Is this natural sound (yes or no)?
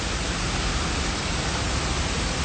yes